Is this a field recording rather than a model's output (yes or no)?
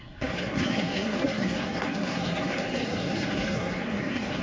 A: no